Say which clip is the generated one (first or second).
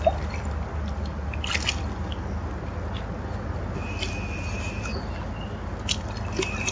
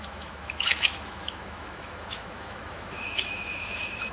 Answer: second